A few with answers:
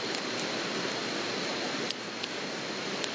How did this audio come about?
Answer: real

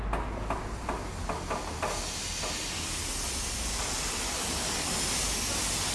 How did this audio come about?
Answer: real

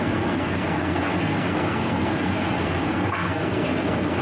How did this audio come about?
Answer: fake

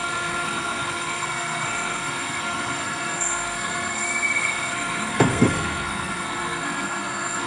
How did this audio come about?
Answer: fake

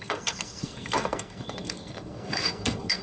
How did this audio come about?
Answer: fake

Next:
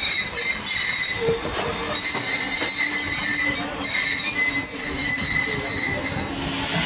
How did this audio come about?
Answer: real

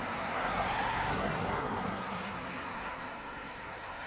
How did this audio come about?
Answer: fake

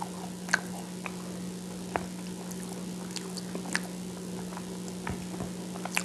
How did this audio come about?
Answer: real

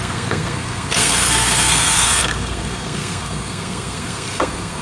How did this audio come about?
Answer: fake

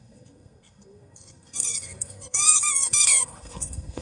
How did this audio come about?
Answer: fake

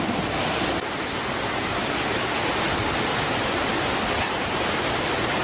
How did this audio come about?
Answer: real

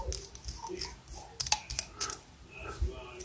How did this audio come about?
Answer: real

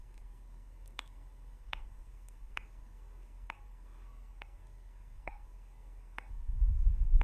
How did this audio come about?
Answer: fake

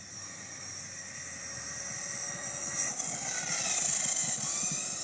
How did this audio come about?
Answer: real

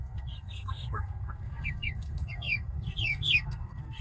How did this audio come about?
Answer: fake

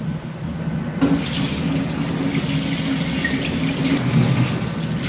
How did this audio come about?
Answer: real